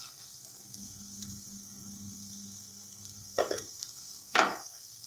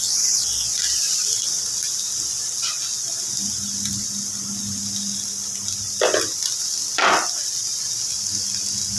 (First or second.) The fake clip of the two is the first